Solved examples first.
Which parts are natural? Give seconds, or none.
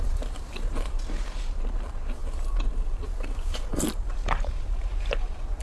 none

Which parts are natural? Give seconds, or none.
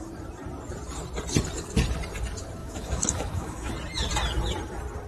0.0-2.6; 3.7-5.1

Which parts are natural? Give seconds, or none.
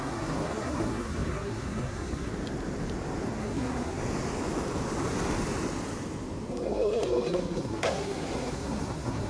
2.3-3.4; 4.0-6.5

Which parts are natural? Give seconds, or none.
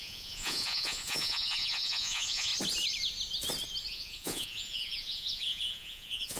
2.5-3.9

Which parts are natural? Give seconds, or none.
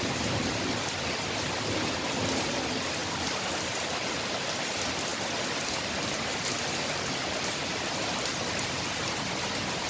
0.0-9.9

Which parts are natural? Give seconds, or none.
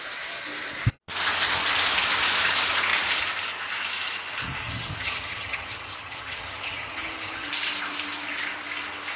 0.0-4.6; 7.5-9.2